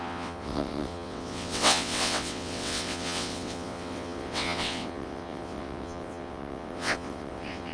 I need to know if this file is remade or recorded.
remade